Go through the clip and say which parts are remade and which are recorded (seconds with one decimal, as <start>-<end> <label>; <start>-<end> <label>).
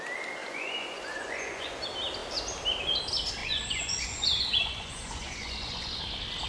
0.0-0.4 recorded; 0.4-1.8 remade; 1.8-3.4 recorded; 3.4-6.0 remade; 6.0-6.5 recorded